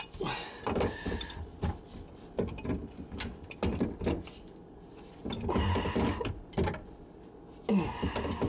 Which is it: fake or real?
real